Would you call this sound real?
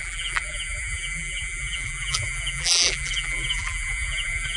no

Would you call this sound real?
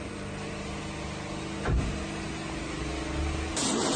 yes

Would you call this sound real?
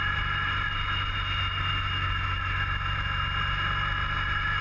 yes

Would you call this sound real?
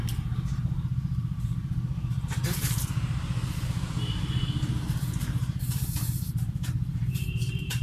no